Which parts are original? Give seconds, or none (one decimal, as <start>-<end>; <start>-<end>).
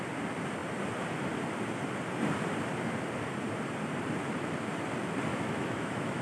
0.0-5.3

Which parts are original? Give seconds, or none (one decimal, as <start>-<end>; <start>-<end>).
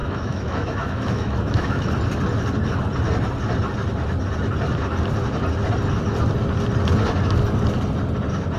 1.9-8.6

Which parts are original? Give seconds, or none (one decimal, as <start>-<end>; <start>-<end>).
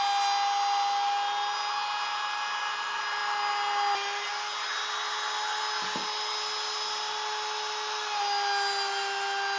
0.0-9.6